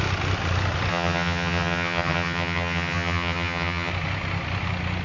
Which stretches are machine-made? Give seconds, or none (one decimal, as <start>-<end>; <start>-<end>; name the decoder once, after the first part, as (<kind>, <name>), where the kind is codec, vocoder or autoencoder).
0.9-3.9 (vocoder, HiFi-GAN)